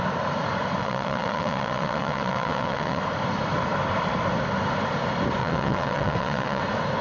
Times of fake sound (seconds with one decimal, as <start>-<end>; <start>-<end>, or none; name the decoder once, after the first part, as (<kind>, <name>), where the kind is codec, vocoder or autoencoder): 0.8-3.0 (vocoder, WaveNeXt); 5.4-6.6